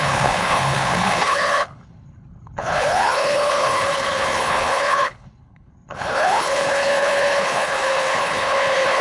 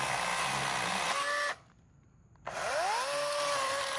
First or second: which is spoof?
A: first